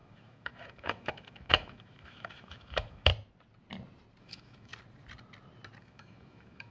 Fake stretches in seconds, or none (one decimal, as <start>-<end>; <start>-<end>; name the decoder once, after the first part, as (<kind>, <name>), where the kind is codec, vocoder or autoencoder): 0.0-3.1 (autoencoder, DAC-VAE); 4.2-4.7; 5.8-6.7